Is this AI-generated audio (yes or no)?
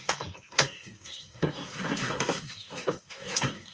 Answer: yes